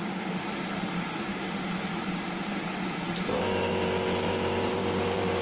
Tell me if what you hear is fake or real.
fake